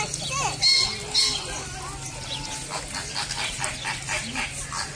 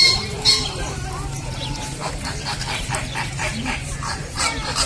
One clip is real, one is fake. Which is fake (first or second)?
second